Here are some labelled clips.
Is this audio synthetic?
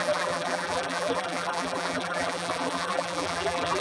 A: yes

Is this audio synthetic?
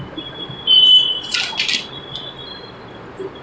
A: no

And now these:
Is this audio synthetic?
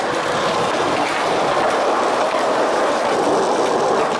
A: no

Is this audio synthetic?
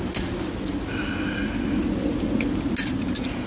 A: no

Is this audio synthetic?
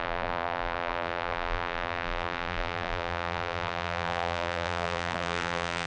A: yes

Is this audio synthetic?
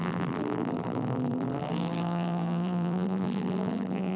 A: yes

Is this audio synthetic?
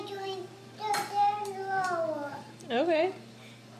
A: yes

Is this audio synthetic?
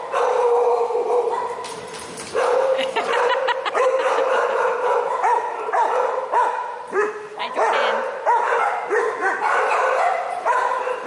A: yes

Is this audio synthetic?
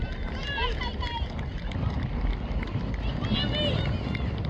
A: no